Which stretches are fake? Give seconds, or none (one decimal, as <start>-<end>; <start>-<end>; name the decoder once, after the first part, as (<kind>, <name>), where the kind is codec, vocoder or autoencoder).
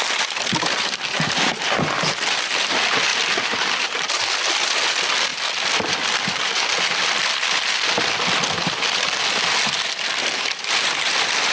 none